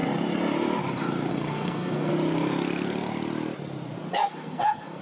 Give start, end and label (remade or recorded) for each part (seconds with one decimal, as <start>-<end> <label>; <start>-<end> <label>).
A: 0.0-1.3 recorded; 1.3-2.1 remade; 2.1-4.1 recorded; 4.1-5.0 remade

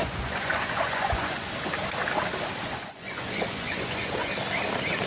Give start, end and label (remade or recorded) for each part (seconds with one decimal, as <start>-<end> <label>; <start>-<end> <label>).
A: 0.0-1.5 remade; 1.5-2.7 recorded; 2.7-4.3 remade; 4.3-5.1 recorded

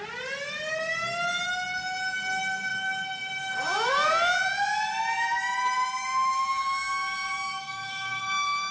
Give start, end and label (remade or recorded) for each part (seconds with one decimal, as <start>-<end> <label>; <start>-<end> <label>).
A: 0.0-6.0 recorded; 6.0-8.7 remade

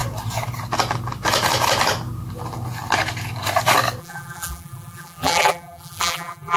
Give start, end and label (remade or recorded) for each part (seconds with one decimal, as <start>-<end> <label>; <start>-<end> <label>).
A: 0.0-4.0 recorded; 4.0-6.6 remade